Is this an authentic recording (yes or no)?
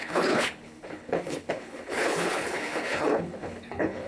no